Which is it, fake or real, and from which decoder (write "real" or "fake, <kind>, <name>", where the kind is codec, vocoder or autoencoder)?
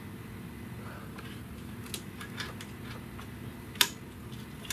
real